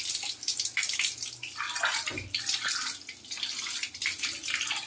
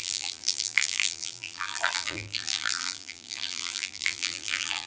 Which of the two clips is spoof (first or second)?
second